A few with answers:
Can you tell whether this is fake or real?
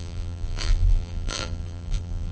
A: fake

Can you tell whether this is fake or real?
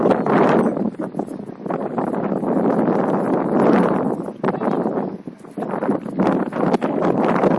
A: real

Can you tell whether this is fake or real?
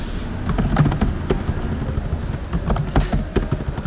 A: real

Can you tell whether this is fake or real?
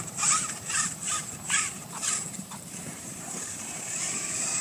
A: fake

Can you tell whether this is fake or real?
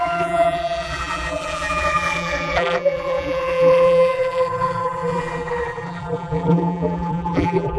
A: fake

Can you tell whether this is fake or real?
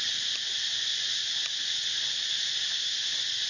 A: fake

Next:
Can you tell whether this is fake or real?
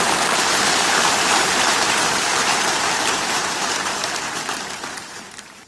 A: fake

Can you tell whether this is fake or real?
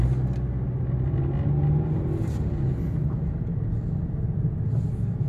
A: real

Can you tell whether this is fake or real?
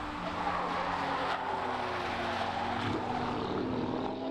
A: real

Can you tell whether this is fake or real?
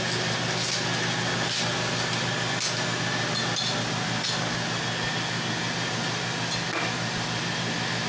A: real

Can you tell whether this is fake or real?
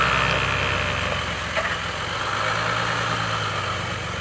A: real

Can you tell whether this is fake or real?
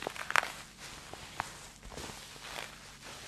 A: real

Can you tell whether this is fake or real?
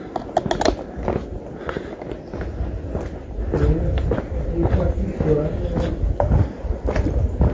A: real